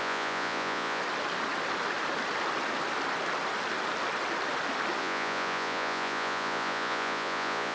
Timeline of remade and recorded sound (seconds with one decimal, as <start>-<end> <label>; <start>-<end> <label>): 0.0-1.0 remade; 1.0-5.0 recorded; 5.0-7.7 remade